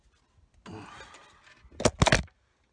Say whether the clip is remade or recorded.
recorded